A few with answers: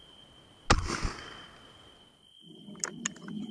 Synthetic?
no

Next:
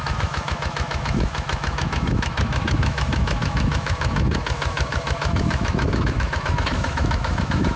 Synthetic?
yes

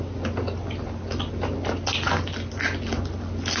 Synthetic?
no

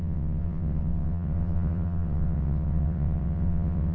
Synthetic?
yes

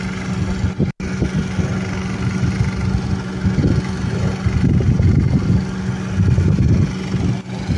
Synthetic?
no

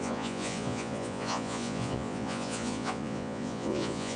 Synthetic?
yes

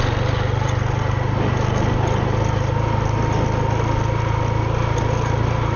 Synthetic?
no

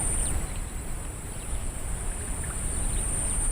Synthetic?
yes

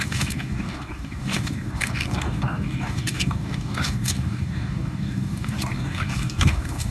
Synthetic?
yes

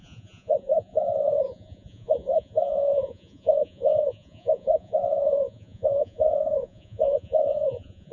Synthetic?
yes